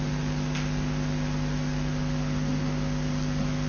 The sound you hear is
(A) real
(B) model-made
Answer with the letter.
A